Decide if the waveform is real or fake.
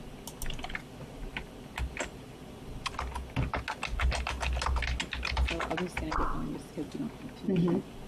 real